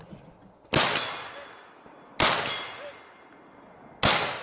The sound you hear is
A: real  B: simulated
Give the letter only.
A